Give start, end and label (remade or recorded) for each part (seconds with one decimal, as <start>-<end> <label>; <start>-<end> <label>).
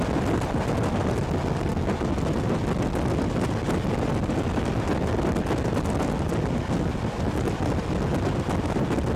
0.0-9.2 recorded